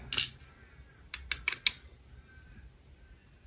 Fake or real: real